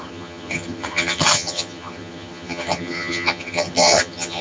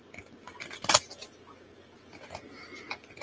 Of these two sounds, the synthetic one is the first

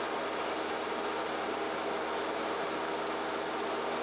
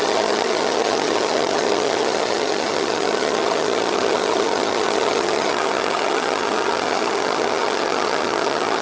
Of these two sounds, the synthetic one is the second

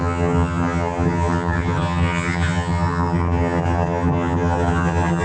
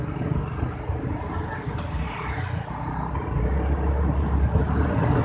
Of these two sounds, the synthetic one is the first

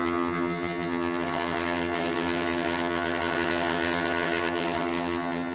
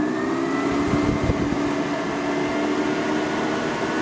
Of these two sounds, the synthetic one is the first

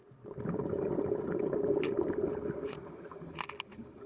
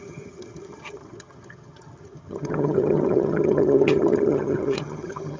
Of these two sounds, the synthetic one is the second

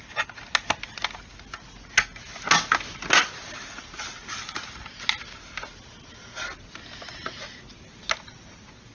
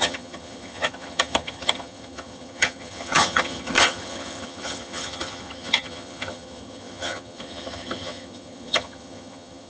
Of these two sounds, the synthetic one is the second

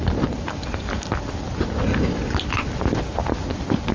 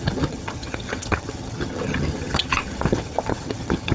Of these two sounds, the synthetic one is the second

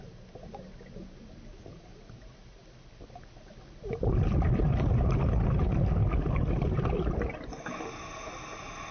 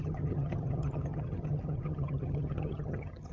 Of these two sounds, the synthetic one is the second